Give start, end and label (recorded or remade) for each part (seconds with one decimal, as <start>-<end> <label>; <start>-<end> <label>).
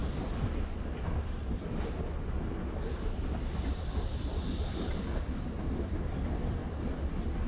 0.0-6.6 recorded; 6.6-7.1 remade; 7.1-7.5 recorded